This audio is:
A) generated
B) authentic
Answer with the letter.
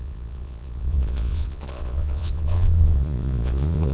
A